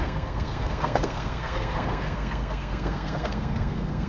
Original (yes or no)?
no